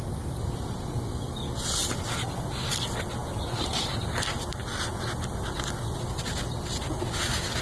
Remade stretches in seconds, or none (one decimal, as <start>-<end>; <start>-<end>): 3.2-4.6